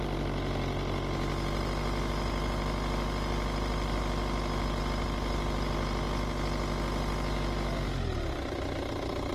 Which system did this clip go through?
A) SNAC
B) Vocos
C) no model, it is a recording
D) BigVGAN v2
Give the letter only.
C